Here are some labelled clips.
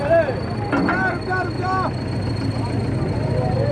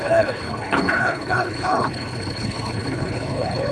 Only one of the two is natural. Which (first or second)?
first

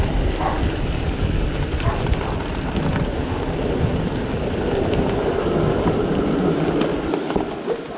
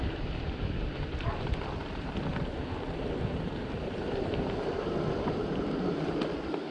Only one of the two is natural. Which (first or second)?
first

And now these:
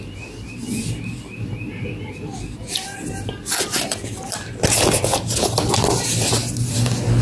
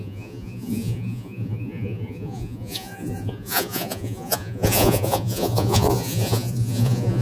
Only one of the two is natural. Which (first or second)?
first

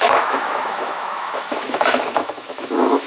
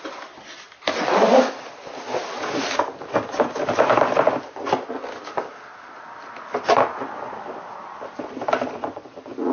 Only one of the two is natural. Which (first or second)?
second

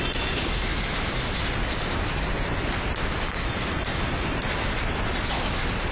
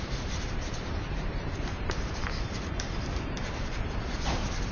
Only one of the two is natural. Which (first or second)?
first